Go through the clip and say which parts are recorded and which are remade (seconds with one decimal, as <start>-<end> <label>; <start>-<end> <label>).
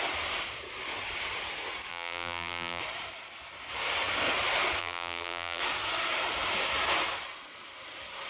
0.0-1.9 recorded; 1.9-2.8 remade; 2.8-4.8 recorded; 4.8-5.6 remade; 5.6-8.3 recorded